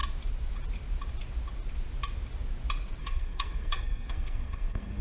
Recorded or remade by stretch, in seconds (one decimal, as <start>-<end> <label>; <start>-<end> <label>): 0.0-3.0 recorded; 3.0-5.0 remade